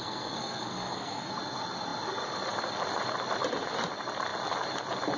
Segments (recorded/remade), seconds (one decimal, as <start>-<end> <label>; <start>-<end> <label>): 0.0-1.3 remade; 1.3-5.2 recorded